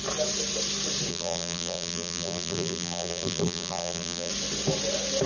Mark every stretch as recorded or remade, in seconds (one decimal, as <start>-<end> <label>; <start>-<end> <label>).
0.0-1.1 recorded; 1.1-4.3 remade; 4.3-5.3 recorded